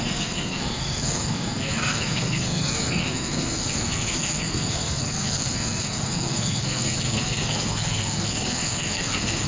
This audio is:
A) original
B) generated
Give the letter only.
B